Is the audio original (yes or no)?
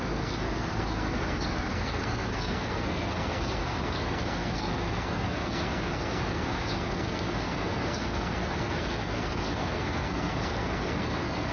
no